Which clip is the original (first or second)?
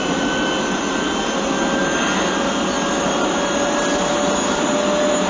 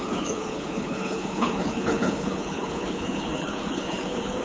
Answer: first